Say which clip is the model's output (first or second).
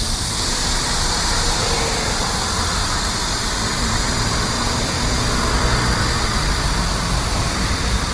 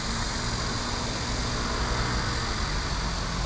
first